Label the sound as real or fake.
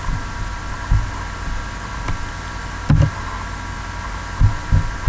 real